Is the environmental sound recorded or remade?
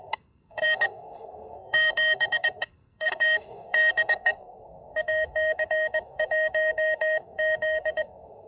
remade